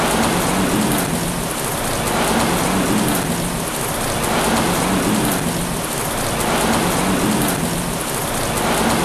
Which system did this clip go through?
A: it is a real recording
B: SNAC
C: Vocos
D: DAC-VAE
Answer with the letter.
A